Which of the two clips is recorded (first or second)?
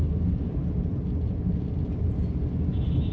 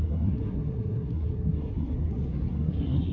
first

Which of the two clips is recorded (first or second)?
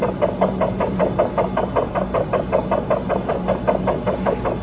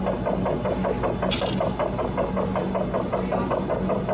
second